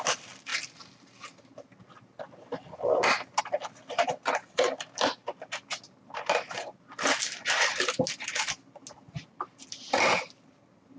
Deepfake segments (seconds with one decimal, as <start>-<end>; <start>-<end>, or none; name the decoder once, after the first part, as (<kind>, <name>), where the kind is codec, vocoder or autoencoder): none